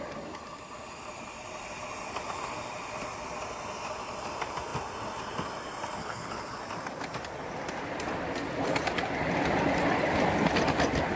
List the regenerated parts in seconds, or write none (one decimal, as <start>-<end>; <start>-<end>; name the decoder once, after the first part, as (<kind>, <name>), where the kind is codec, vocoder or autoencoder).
6.0-6.6 (codec, HILCodec)